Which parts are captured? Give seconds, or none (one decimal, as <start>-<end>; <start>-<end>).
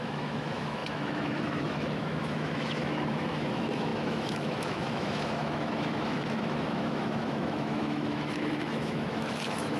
none